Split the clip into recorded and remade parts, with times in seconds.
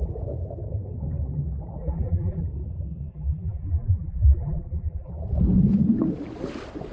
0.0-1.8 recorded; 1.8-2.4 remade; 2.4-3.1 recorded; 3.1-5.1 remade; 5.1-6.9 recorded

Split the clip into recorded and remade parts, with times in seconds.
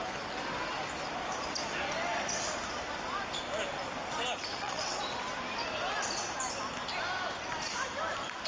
0.0-4.5 recorded; 4.5-5.0 remade; 5.0-8.5 recorded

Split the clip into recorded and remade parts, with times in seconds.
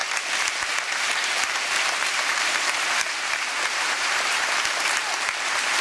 0.0-5.8 remade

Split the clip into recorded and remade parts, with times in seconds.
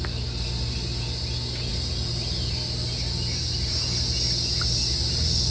0.0-5.5 recorded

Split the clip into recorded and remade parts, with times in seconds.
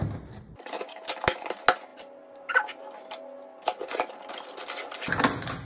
0.0-5.6 recorded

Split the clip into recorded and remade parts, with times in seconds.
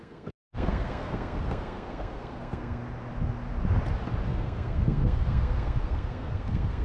0.0-2.8 remade; 2.8-4.3 recorded; 4.3-6.8 remade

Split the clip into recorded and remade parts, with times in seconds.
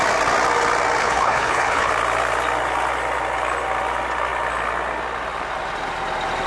0.0-1.0 recorded; 1.0-1.9 remade; 1.9-6.5 recorded